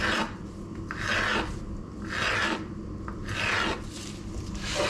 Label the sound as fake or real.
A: real